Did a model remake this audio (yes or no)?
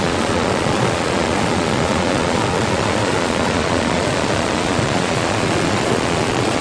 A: yes